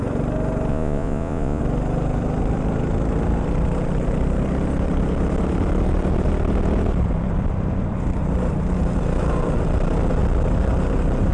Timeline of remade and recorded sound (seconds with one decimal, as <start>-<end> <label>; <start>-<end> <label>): 0.0-0.7 recorded; 0.7-1.6 remade; 1.6-11.3 recorded